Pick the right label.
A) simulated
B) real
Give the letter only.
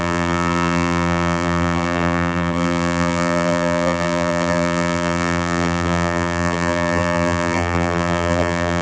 A